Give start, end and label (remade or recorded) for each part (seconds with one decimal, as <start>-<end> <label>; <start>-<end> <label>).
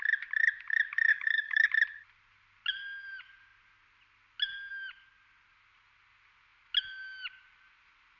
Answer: 0.0-1.1 recorded; 1.1-1.7 remade; 1.7-8.2 recorded